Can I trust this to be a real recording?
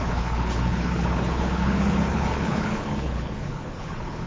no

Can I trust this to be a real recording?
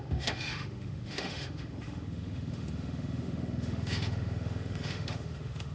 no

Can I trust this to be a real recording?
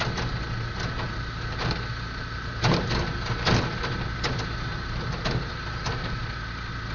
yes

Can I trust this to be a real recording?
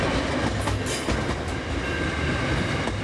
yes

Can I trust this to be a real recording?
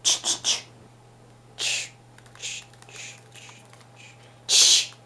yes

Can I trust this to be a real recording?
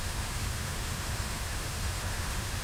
no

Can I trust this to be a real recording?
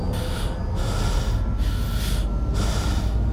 yes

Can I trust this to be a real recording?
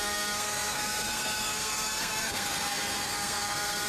no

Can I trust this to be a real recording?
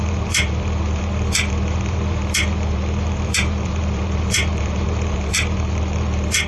no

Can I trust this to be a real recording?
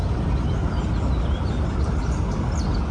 yes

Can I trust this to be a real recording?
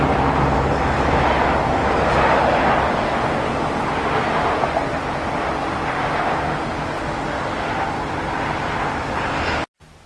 yes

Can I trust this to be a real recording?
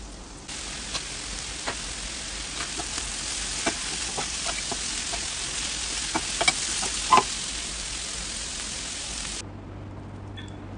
yes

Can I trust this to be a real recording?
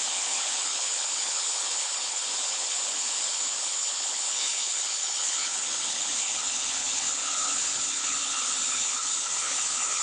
no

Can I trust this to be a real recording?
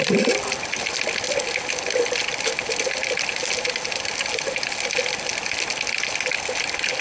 yes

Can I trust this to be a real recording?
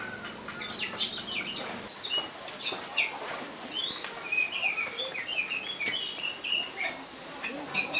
yes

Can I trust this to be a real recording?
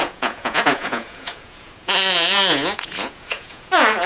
no